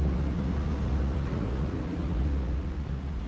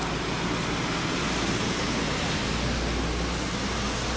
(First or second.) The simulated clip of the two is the first